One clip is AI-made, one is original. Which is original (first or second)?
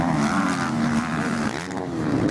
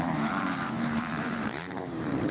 first